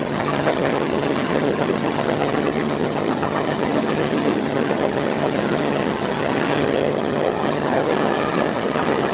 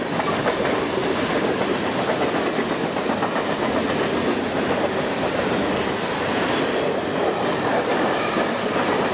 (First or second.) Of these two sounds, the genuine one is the second